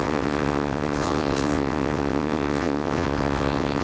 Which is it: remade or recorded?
remade